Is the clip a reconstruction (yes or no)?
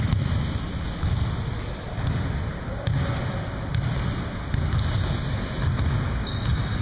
no